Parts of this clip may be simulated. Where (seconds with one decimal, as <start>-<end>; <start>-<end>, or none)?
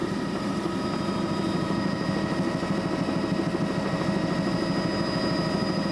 0.0-0.8